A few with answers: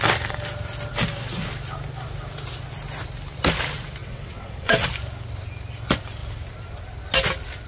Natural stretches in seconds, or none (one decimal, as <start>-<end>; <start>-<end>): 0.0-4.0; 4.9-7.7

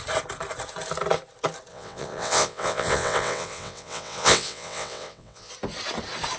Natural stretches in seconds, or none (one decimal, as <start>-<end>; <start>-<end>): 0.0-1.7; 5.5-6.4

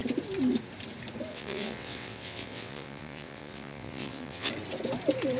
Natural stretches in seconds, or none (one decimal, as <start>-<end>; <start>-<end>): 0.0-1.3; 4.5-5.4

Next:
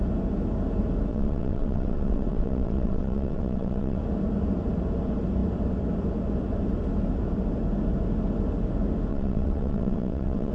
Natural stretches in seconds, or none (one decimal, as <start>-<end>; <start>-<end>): 0.0-1.1; 4.0-9.1

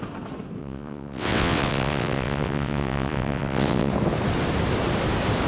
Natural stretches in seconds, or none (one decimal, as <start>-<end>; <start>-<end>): 0.0-0.6; 3.9-5.5

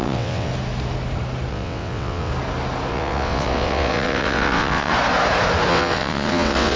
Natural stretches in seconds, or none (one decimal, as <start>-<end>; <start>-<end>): 0.5-1.5; 2.3-2.9; 4.9-5.7